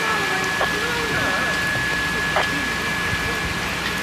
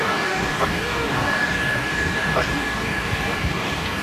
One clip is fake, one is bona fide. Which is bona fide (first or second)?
first